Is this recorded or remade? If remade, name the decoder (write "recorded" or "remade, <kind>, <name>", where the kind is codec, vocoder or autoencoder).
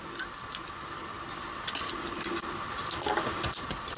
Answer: recorded